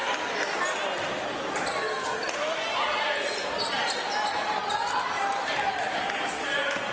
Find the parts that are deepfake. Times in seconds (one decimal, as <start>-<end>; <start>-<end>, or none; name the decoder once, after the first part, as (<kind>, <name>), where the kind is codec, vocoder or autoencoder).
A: none